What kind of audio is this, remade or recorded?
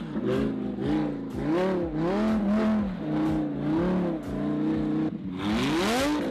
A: recorded